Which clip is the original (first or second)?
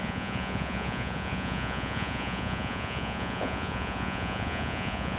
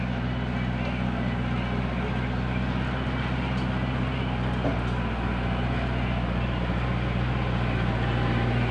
second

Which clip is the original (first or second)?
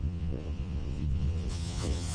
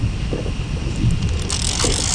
second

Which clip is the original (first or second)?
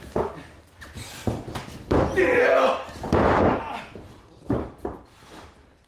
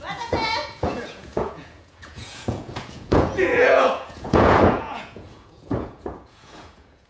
first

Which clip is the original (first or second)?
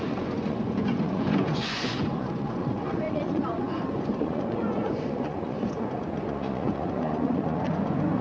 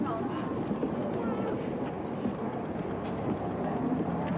second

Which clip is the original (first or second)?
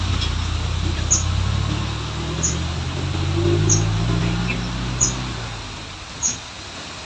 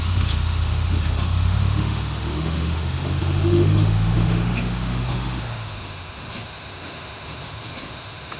first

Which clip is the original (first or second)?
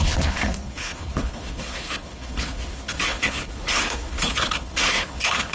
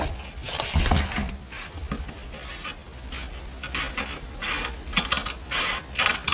second